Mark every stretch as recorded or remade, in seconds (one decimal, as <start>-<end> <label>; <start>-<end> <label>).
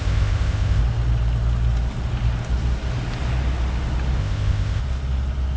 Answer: 0.0-0.8 remade; 0.8-4.2 recorded; 4.2-4.8 remade; 4.8-5.6 recorded